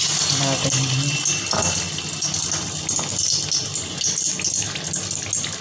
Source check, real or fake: real